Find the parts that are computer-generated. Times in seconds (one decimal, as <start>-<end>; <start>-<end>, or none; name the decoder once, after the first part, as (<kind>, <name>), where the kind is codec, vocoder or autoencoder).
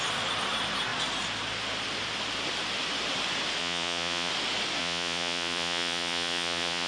3.6-4.3 (vocoder, Vocos); 4.8-6.9